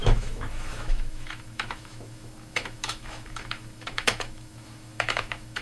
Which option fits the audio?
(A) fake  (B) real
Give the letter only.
A